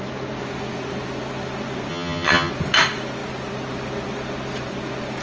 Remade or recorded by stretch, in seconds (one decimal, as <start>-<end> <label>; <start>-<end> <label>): 0.0-1.9 recorded; 1.9-2.5 remade; 2.5-5.2 recorded